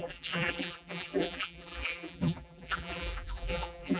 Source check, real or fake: fake